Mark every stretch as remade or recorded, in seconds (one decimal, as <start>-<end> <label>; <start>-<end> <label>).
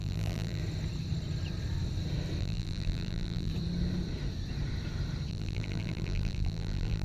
0.0-0.6 remade; 0.6-2.4 recorded; 2.4-3.5 remade; 3.5-5.3 recorded; 5.3-7.0 remade